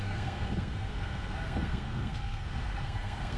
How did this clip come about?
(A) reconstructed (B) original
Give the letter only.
A